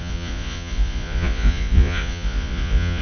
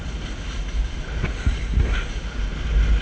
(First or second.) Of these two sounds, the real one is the second